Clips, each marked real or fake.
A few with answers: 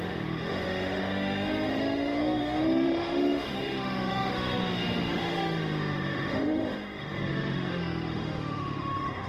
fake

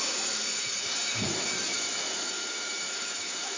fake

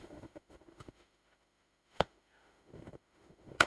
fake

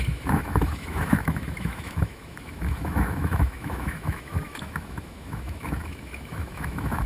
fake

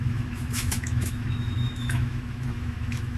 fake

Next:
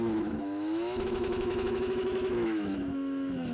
fake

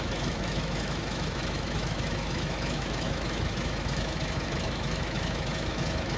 fake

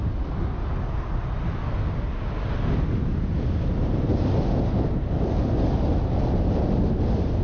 real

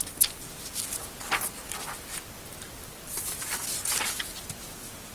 real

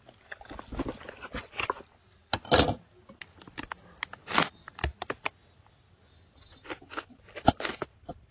real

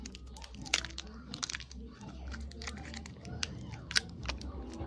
real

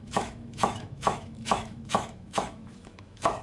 fake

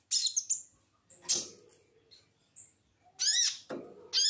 real